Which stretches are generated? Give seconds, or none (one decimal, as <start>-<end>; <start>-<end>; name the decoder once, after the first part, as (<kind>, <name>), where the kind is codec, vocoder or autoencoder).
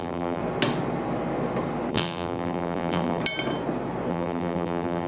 0.0-0.4 (vocoder, BigVGAN v2); 1.9-3.2; 4.1-5.1